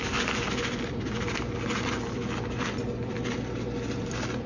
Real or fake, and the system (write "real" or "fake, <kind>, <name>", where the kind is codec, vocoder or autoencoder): real